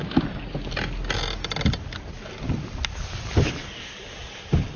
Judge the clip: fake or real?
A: real